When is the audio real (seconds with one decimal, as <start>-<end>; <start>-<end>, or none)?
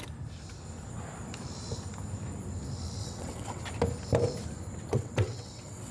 0.0-3.0; 3.6-4.9